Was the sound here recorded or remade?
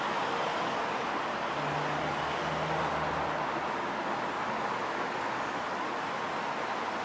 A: recorded